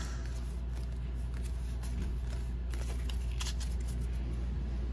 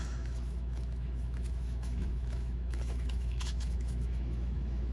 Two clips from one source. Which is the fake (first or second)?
second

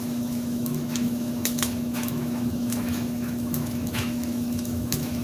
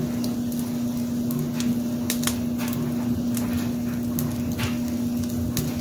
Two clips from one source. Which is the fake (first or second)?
first